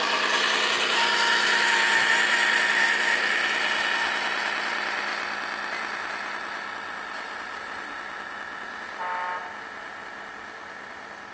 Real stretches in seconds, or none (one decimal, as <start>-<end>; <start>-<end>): 0.0-11.3